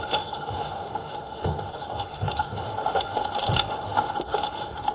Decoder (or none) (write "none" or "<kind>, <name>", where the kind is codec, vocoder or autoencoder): autoencoder, DAC-VAE